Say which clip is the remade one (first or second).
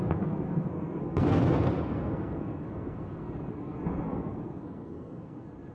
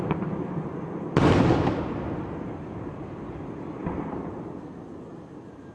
first